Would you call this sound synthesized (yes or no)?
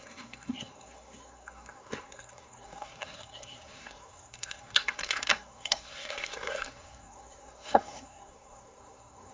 yes